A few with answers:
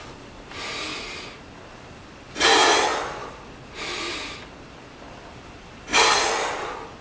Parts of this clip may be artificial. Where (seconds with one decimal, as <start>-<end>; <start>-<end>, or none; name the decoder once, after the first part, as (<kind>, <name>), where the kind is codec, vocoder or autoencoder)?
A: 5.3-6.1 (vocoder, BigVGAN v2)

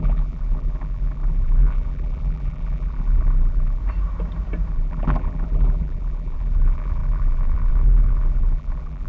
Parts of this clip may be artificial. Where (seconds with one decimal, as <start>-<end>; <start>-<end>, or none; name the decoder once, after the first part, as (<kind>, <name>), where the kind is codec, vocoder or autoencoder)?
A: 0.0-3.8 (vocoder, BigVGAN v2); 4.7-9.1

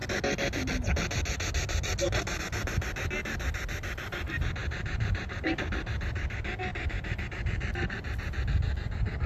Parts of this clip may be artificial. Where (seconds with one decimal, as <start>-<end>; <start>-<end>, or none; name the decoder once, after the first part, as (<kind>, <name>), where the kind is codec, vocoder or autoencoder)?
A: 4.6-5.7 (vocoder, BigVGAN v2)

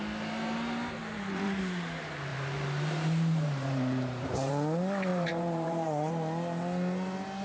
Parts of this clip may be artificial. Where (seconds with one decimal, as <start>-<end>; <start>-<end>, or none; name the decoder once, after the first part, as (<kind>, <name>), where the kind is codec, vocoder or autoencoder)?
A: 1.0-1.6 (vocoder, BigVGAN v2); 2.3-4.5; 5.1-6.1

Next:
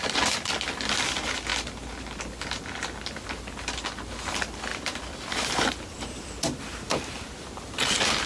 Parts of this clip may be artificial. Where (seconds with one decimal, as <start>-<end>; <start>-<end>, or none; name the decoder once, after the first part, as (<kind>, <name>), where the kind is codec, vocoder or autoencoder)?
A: 4.7-7.1 (vocoder, BigVGAN v2)

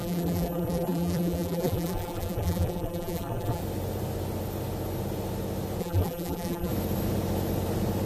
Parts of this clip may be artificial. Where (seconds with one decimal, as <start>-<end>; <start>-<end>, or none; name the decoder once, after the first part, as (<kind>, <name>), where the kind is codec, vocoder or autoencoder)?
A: 0.0-3.6 (vocoder, BigVGAN v2); 5.8-6.7

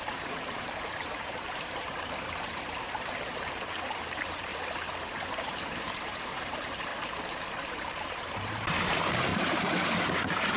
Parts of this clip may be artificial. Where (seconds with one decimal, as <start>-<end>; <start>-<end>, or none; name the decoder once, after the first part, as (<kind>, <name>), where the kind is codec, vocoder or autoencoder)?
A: 0.0-4.5 (vocoder, BigVGAN v2); 5.3-6.9; 7.7-10.6